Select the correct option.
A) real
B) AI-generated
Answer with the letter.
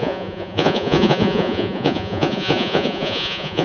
B